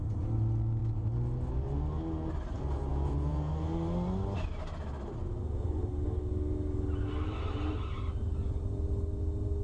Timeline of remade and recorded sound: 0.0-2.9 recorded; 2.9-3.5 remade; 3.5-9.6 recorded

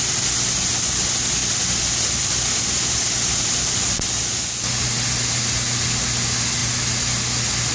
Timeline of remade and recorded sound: 0.0-1.4 recorded; 1.4-4.2 remade; 4.2-7.7 recorded

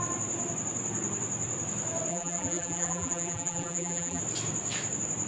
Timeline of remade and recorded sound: 0.0-2.1 recorded; 2.1-4.2 remade; 4.2-5.3 recorded

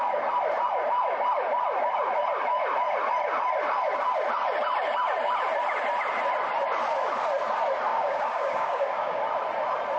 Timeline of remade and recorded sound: 0.0-7.9 recorded; 7.9-9.2 remade; 9.2-10.0 recorded

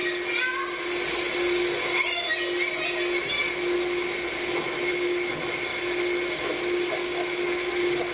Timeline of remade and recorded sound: 0.0-8.1 recorded